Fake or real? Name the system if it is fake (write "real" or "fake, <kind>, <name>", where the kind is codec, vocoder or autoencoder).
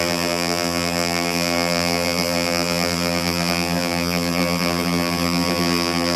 fake, vocoder, BigVGAN v2